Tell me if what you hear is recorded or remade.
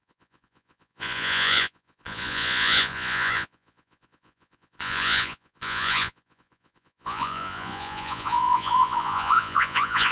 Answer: remade